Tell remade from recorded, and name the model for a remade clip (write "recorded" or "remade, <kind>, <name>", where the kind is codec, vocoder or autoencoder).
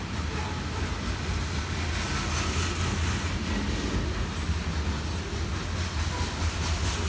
recorded